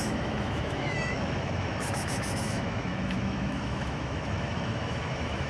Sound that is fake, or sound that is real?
fake